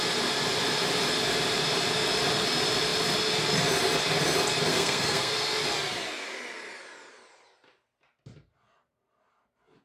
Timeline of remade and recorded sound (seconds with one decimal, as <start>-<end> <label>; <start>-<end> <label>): 0.0-4.7 recorded; 4.7-5.3 remade; 5.3-9.8 recorded